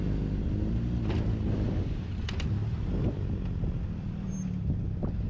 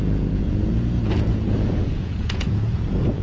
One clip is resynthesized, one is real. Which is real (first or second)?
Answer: first